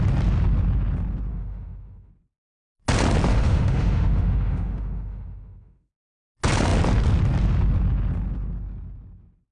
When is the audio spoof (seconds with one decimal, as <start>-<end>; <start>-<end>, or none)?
1.3-2.1; 3.3-5.9

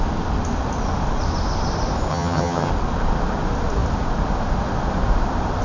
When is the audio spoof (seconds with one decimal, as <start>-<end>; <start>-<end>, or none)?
2.1-2.7

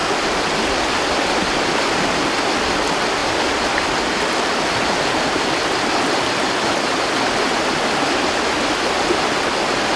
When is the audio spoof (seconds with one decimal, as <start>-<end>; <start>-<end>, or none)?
none

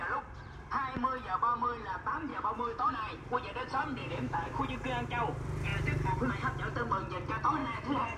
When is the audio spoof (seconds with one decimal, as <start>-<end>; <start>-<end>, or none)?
2.3-2.9; 4.0-4.6; 7.6-8.2

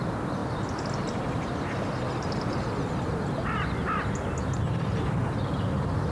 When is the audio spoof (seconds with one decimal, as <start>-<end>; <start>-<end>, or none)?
none